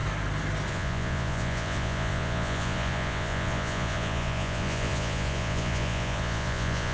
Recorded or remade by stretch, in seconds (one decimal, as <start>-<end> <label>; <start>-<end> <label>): 0.0-0.7 recorded; 0.7-6.9 remade